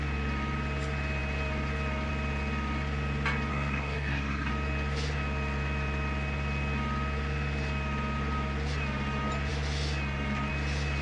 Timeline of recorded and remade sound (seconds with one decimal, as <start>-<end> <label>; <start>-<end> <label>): 0.0-3.5 recorded; 3.5-4.5 remade; 4.5-11.0 recorded